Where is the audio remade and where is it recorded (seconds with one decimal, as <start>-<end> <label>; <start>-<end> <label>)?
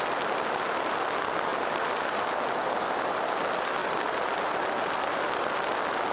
0.0-3.8 recorded; 3.8-5.5 remade; 5.5-6.1 recorded